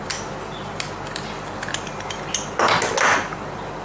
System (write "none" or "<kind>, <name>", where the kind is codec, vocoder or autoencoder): none